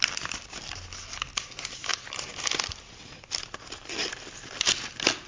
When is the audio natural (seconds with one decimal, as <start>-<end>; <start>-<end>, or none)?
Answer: 0.0-5.3